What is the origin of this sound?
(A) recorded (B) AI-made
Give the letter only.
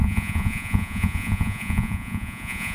B